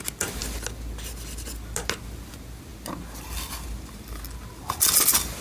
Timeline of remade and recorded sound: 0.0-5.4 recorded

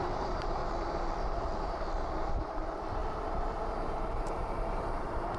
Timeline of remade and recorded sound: 0.0-0.6 remade; 0.6-2.3 recorded; 2.3-5.4 remade